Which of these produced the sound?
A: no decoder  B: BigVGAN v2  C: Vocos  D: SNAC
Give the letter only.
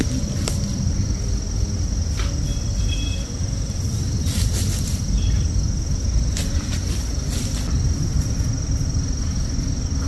A